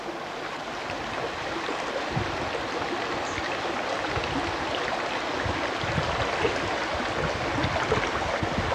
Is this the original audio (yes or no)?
yes